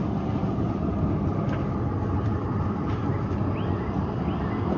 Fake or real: real